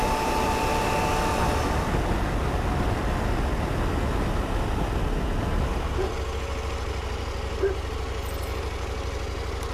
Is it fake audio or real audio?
real